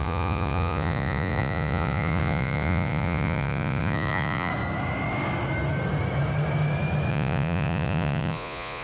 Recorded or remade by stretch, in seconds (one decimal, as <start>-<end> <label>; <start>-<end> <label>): 0.0-4.5 remade; 4.5-7.1 recorded; 7.1-8.8 remade